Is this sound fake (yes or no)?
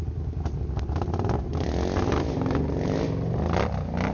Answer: no